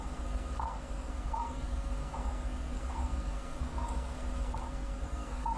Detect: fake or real fake